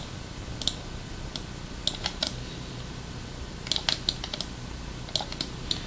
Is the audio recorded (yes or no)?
yes